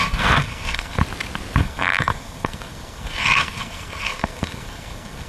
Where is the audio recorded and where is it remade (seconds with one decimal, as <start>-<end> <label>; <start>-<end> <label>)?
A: 0.0-1.0 remade; 1.0-1.6 recorded; 1.6-5.3 remade